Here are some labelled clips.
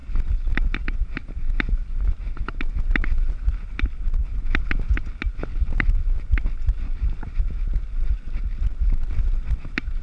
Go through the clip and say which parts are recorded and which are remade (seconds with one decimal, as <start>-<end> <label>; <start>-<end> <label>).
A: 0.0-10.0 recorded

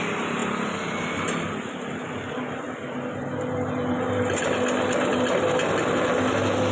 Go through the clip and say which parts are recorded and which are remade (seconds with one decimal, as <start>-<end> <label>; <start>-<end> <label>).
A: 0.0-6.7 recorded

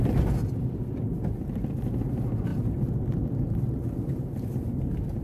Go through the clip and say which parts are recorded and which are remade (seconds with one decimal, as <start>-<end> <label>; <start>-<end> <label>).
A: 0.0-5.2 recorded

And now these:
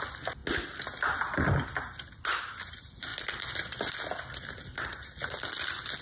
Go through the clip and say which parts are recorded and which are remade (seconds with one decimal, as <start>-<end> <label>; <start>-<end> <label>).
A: 0.0-6.0 recorded

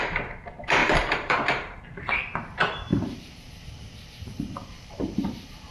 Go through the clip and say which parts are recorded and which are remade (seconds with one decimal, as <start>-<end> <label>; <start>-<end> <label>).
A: 0.0-0.8 recorded; 0.8-1.8 remade; 1.8-2.9 recorded; 2.9-3.5 remade; 3.5-4.6 recorded; 4.6-5.7 remade

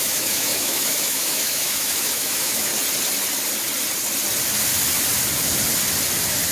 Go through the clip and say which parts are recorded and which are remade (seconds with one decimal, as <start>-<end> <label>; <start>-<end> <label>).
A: 0.0-2.7 remade; 2.7-6.5 recorded

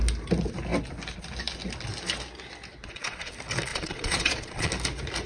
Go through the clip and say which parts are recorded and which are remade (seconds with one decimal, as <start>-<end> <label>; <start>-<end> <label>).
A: 0.0-2.8 recorded; 2.8-3.3 remade; 3.3-3.7 recorded; 3.7-4.7 remade; 4.7-5.3 recorded

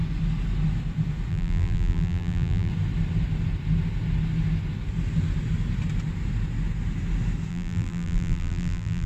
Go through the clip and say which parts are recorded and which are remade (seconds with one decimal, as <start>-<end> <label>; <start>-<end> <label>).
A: 0.0-1.3 recorded; 1.3-2.7 remade; 2.7-7.5 recorded; 7.5-9.1 remade